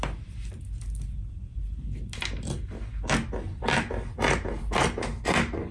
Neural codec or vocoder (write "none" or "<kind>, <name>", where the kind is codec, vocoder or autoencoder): none